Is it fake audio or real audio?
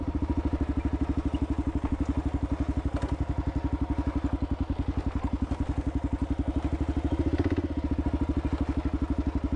real